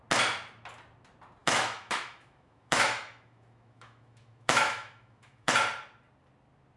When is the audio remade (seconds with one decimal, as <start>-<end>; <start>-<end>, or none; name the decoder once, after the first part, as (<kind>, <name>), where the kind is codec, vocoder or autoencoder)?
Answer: 1.4-5.5 (autoencoder, DAC-VAE)